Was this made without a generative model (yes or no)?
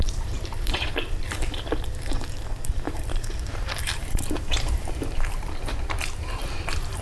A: no